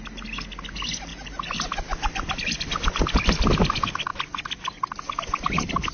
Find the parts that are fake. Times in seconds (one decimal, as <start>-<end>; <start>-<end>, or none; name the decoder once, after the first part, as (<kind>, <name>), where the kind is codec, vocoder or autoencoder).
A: none